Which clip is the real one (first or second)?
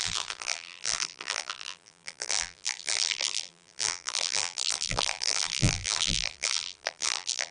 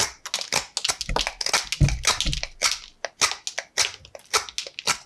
second